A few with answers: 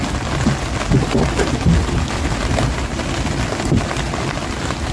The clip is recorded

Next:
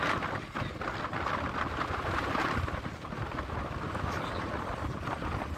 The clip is recorded